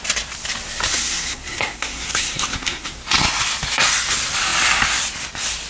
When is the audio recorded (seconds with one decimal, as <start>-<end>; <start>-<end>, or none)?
0.0-0.9; 3.0-5.7